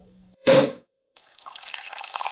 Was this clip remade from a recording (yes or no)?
yes